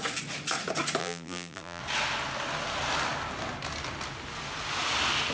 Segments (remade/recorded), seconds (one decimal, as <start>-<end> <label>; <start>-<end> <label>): 0.0-1.0 recorded; 1.0-1.8 remade; 1.8-5.3 recorded

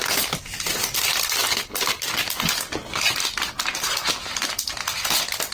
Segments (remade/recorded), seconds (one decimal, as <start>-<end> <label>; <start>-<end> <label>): 0.0-5.5 recorded

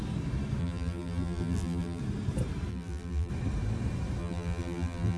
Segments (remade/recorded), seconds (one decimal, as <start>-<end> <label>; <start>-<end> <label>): 0.0-0.6 recorded; 0.6-2.0 remade; 2.0-2.7 recorded; 2.7-3.3 remade; 3.3-4.2 recorded; 4.2-5.2 remade

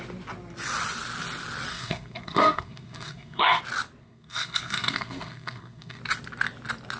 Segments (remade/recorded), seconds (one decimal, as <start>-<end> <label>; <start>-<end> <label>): 0.0-1.7 recorded; 1.7-3.6 remade; 3.6-4.0 recorded; 4.0-6.0 remade; 6.0-7.0 recorded